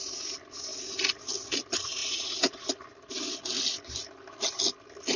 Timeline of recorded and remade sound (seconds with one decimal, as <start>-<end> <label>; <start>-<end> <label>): 0.0-5.2 recorded